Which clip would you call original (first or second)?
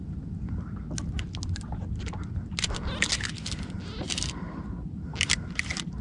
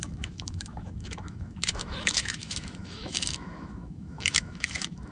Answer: first